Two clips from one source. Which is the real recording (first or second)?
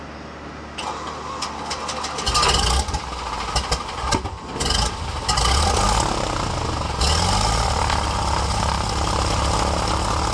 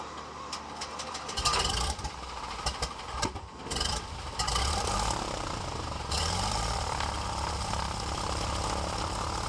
first